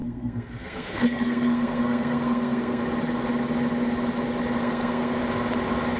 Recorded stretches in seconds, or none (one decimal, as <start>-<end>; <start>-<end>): 2.8-4.6; 5.2-6.0